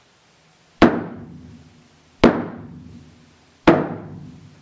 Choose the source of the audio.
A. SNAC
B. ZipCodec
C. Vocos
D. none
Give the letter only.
D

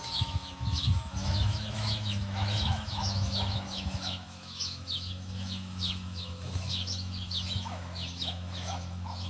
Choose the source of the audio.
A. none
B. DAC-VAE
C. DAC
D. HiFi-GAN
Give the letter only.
B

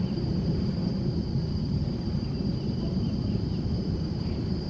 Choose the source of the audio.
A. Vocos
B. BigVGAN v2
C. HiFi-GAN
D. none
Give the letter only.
B